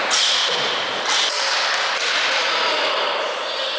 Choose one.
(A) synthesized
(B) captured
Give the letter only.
B